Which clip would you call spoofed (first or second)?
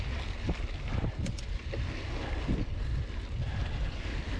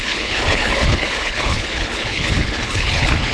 second